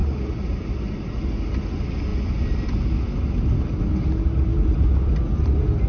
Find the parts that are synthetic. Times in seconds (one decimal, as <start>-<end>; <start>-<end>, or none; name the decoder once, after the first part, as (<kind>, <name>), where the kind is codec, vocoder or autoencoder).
0.0-1.1 (vocoder, BigVGAN v2)